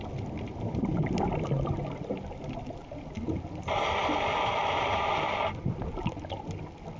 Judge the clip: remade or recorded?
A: recorded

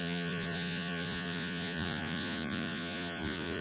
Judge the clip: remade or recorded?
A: remade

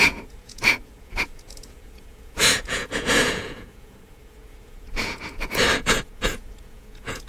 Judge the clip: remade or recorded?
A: remade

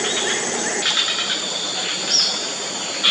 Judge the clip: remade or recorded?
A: recorded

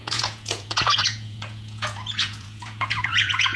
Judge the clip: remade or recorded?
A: remade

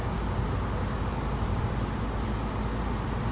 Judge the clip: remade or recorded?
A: recorded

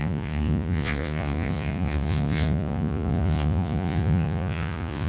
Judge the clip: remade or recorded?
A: remade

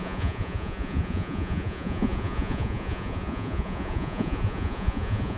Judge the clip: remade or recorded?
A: remade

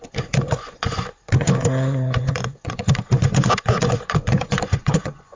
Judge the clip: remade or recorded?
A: remade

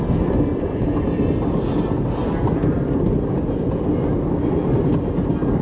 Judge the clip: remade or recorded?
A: recorded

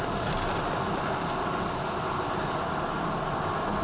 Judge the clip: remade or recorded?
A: recorded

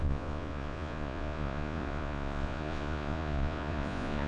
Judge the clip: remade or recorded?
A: remade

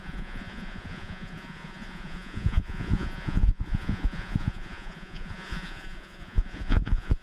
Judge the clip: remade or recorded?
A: remade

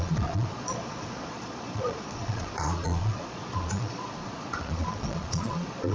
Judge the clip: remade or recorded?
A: remade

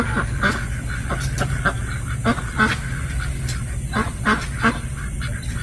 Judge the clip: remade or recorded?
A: recorded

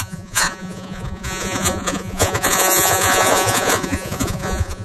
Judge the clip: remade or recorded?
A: remade